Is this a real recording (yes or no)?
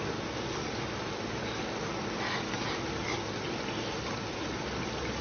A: yes